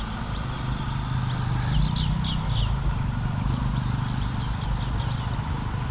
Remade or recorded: recorded